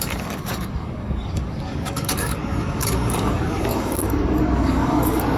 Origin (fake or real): fake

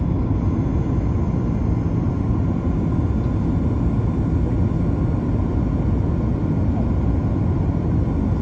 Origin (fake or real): real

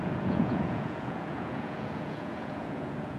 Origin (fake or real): fake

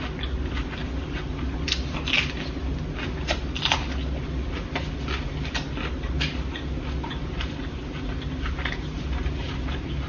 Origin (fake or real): real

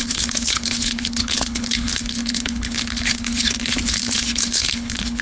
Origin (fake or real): fake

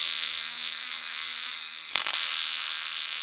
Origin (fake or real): fake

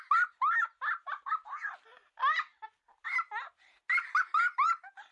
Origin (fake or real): real